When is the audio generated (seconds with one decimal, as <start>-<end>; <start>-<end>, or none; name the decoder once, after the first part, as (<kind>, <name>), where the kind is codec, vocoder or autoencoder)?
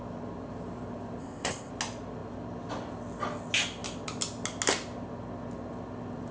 1.2-1.7 (codec, ZipCodec)